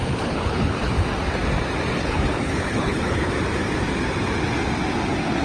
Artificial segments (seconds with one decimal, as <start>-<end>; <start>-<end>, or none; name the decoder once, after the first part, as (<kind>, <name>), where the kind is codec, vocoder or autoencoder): 0.0-0.9 (codec, HILCodec); 2.0-3.3